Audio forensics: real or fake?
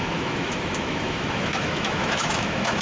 fake